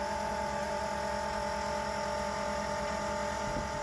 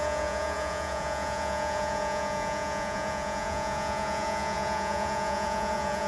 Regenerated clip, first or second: second